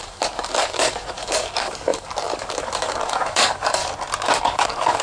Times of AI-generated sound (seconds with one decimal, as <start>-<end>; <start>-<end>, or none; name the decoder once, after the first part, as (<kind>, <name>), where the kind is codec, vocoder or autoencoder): 0.0-3.8 (codec, DAC); 4.4-5.0